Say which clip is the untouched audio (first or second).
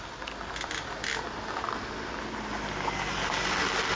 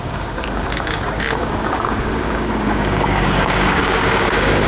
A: first